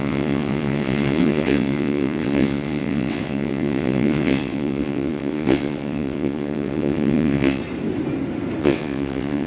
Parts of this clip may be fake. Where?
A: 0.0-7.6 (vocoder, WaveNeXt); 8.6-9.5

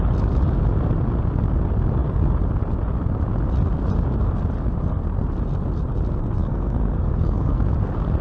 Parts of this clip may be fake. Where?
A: 6.2-7.6 (codec, SNAC)

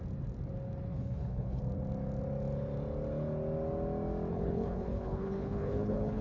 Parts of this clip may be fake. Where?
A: 0.9-1.6 (codec, HILCodec); 4.3-6.2

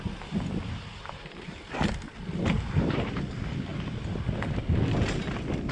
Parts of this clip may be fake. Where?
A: none

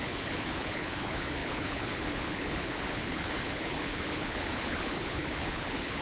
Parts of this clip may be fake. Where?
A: 0.0-6.0 (codec, HILCodec)

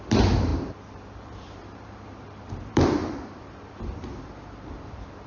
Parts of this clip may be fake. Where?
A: 0.0-3.0 (vocoder, BigVGAN v2); 4.7-5.3